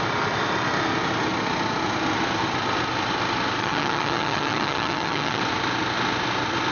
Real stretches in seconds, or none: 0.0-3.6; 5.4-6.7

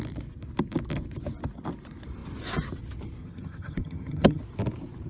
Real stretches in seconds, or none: 0.0-3.2; 4.4-5.1

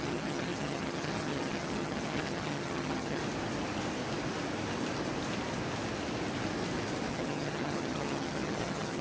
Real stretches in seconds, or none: 3.2-7.1

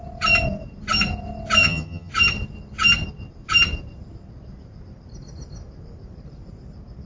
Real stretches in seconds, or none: 0.0-1.6; 2.1-7.1

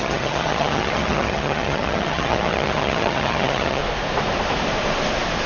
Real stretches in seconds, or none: 3.8-5.5

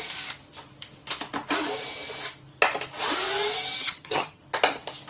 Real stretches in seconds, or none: 0.0-3.8; 4.4-5.1

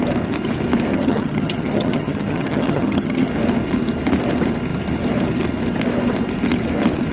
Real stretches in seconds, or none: 0.0-0.9; 3.3-7.1